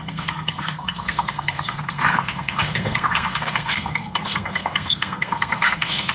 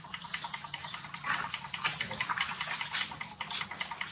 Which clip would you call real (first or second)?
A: second